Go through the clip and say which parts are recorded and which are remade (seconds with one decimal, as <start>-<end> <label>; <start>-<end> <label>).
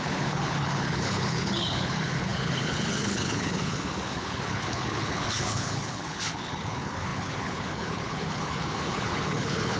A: 0.0-9.8 remade